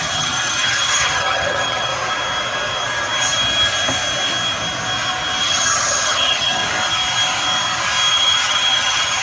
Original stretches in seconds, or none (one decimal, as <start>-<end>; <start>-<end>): 1.9-5.4; 6.6-8.1